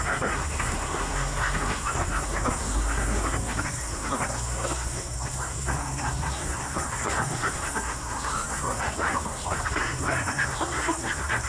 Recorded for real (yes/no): no